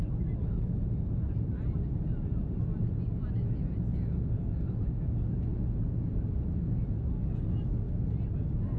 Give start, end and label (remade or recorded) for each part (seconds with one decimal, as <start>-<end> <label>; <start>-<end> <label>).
0.0-8.8 recorded